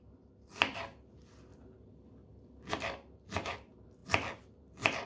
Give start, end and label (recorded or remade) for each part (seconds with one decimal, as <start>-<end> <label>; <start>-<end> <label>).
0.0-5.1 recorded